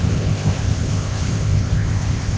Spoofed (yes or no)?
yes